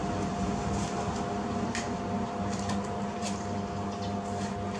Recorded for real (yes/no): yes